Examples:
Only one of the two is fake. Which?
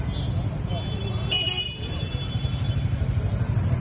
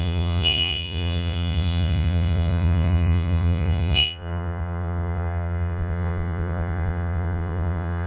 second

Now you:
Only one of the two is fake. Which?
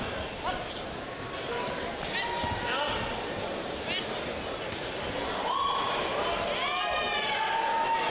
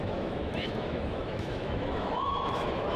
second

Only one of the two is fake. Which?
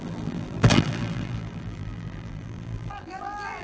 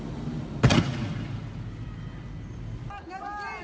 first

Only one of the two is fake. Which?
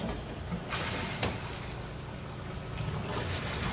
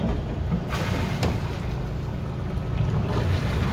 second